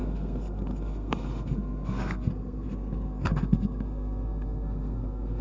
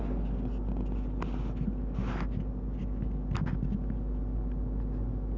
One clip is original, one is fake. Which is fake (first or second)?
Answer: first